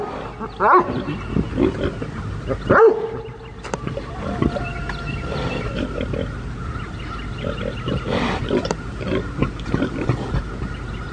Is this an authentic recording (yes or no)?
yes